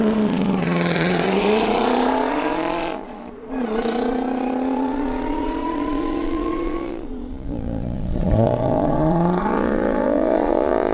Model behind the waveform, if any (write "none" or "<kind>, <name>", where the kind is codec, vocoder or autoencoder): vocoder, Vocos